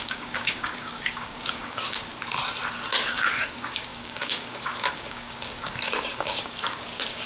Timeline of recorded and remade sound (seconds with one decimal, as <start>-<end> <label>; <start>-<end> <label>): 0.0-2.1 remade; 2.1-3.1 recorded; 3.1-7.3 remade